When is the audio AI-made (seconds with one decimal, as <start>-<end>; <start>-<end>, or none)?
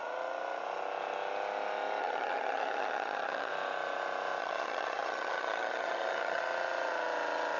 2.0-3.5; 4.4-6.4